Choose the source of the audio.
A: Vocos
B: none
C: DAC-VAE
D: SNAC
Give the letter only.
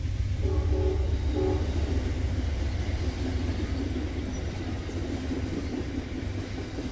B